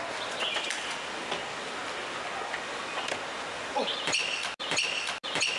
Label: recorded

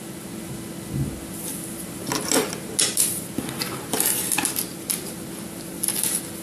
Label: recorded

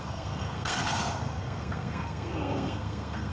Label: remade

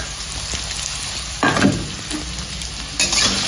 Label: recorded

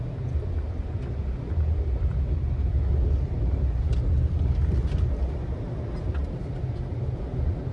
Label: recorded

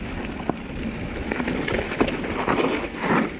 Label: recorded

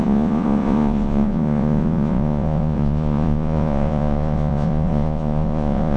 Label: remade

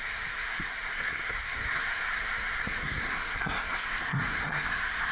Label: remade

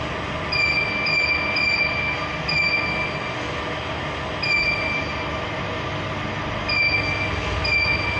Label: recorded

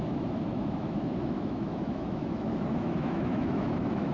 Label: remade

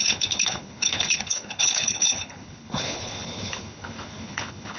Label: remade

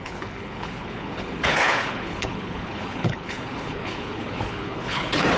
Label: remade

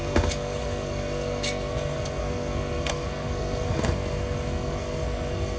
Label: remade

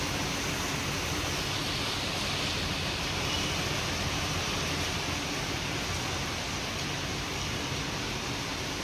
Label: recorded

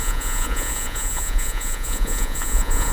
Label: remade